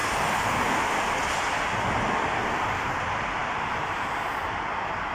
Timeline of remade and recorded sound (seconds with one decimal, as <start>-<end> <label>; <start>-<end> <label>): 0.0-5.1 recorded